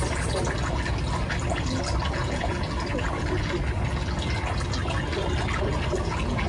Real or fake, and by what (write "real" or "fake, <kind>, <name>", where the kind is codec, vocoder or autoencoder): real